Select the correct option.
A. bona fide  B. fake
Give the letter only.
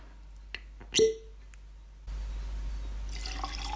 A